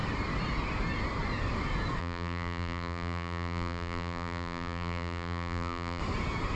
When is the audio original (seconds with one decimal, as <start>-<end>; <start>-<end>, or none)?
0.0-2.0; 6.0-6.6